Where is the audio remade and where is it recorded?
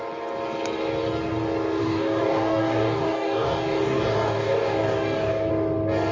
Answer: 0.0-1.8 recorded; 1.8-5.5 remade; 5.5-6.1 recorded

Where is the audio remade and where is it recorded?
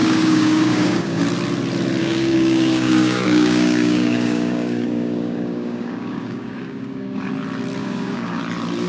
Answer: 0.0-1.2 remade; 1.2-2.0 recorded; 2.0-7.3 remade; 7.3-7.8 recorded; 7.8-8.4 remade; 8.4-8.9 recorded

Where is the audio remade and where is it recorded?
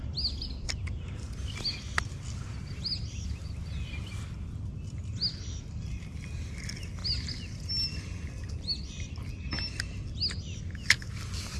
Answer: 0.0-11.6 recorded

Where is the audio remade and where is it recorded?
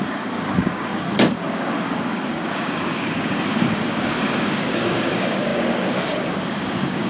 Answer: 0.0-7.1 remade